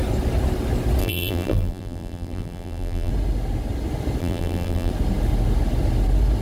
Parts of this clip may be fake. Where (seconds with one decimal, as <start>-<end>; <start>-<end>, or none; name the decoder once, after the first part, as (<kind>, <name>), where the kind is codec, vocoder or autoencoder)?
1.0-3.1 (vocoder, BigVGAN v2); 4.2-4.9